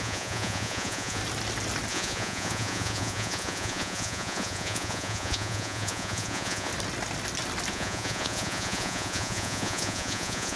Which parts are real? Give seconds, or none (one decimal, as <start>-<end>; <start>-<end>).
1.2-1.9; 6.7-7.7